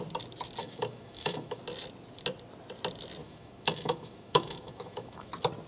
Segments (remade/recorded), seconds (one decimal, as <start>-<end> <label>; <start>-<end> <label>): 0.0-0.6 recorded; 0.6-1.6 remade; 1.6-3.2 recorded; 3.2-5.3 remade; 5.3-5.7 recorded

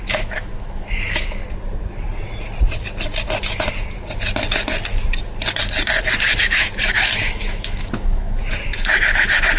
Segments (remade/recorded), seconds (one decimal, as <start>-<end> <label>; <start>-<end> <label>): 0.0-1.4 remade; 1.4-6.4 recorded; 6.4-9.6 remade

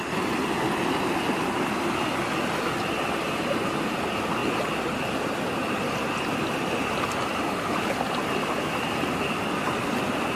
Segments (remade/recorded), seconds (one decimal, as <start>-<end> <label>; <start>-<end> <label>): 0.0-10.4 recorded

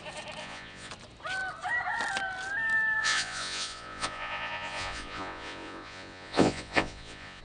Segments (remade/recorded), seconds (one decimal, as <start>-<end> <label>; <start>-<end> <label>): 0.0-0.4 recorded; 0.4-0.9 remade; 0.9-3.0 recorded; 3.0-7.4 remade

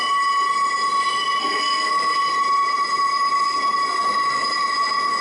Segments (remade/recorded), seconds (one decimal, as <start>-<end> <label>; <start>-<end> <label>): 0.0-1.4 recorded; 1.4-1.9 remade; 1.9-5.2 recorded